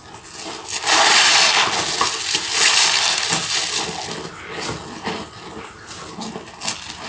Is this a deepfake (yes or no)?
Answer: no